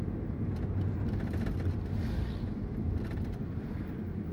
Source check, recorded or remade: recorded